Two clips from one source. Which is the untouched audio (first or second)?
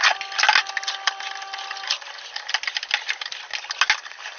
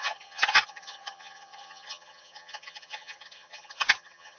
first